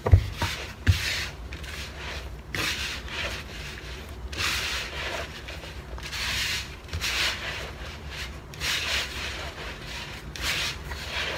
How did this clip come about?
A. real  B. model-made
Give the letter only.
B